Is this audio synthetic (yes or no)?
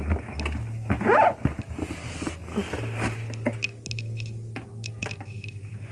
no